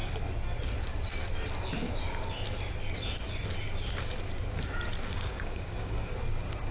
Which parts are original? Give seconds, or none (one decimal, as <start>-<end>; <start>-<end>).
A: 0.0-5.1; 6.1-6.7